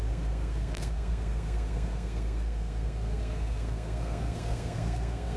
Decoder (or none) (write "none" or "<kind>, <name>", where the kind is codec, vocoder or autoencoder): codec, SNAC